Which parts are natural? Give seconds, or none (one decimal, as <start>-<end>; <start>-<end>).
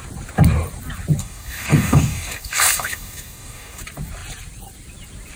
0.0-1.2; 3.8-5.4